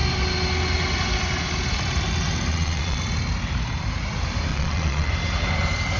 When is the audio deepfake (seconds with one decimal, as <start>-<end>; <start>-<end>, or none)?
2.5-3.0; 4.5-5.1